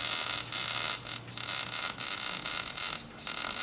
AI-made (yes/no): no